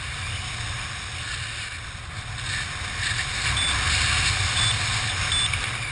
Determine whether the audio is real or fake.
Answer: real